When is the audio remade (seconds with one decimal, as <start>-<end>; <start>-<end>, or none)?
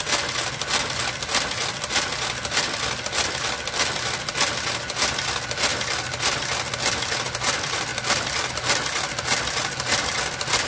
none